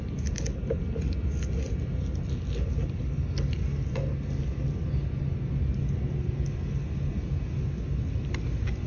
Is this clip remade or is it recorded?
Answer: recorded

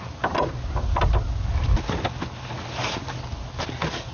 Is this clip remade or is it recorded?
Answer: recorded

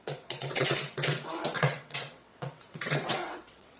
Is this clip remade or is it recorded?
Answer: remade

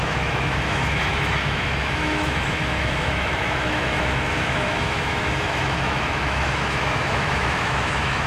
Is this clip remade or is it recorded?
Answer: remade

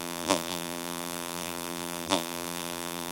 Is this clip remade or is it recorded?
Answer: remade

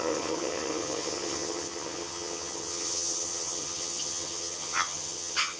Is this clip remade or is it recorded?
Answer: remade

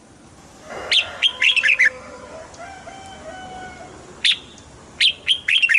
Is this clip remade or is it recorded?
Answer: recorded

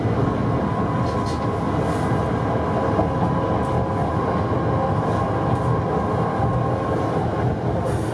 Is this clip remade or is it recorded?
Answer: recorded